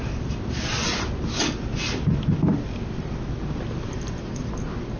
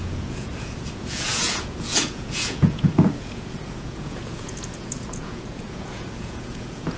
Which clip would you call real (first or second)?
first